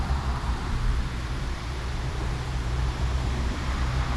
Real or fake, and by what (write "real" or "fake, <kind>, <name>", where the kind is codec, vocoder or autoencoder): fake, vocoder, BigVGAN v2